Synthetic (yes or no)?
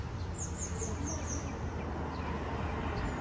no